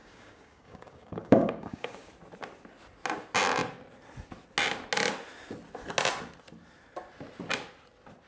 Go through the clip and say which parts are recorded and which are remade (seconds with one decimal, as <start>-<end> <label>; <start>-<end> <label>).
0.0-2.1 remade; 2.1-8.3 recorded